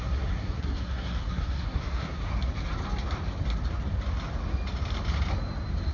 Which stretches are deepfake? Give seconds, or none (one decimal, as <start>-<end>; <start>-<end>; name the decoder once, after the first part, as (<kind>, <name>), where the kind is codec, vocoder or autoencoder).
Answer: 0.0-2.3 (codec, SNAC)